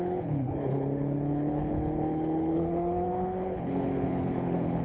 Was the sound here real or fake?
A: fake